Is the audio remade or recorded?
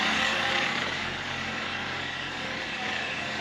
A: remade